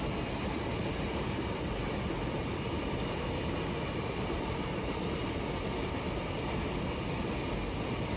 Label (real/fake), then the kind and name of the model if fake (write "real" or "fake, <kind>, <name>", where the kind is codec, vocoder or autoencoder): real